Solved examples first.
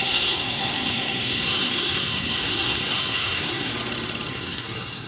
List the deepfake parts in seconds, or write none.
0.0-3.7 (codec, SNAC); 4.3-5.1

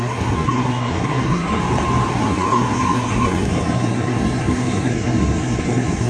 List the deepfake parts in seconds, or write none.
0.0-1.6 (codec, SNAC); 2.1-6.1